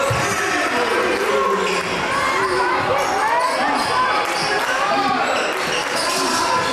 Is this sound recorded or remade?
recorded